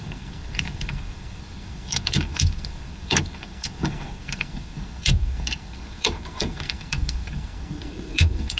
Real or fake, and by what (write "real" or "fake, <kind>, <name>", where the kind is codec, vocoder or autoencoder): fake, codec, SNAC